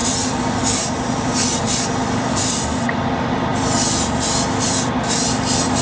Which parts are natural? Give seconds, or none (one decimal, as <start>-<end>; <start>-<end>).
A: 0.0-5.8